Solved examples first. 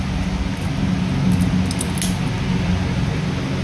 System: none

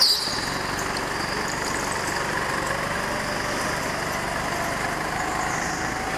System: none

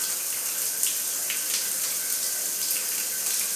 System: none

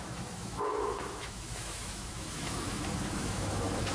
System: autoencoder, DAC-VAE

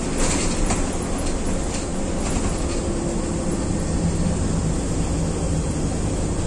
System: none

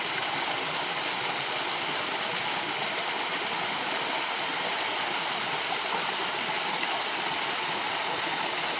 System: none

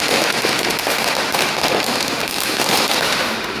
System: autoencoder, DAC-VAE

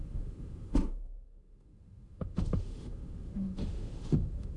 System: autoencoder, DAC-VAE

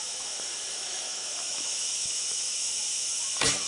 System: autoencoder, DAC-VAE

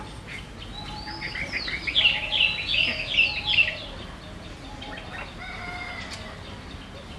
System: none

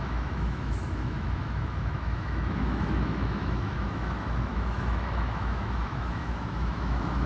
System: autoencoder, DAC-VAE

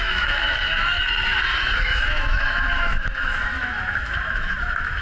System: autoencoder, DAC-VAE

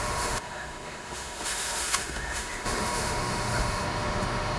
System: autoencoder, DAC-VAE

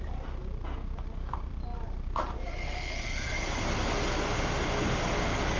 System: none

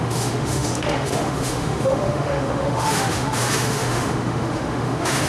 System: autoencoder, DAC-VAE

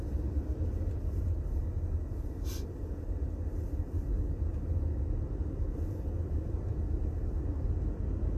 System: none